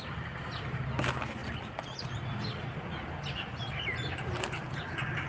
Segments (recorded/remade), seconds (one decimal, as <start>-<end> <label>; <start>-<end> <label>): 0.0-5.3 recorded